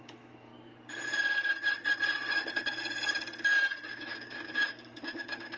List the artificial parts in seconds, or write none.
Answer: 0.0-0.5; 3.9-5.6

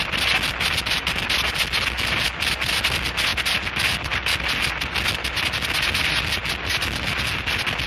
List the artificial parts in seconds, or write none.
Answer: none

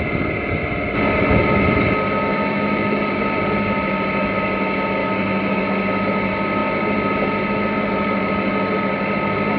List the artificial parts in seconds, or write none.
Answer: 2.3-3.2; 5.0-5.6

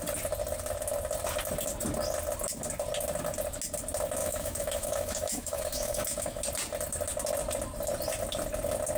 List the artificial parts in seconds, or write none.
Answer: 4.2-6.4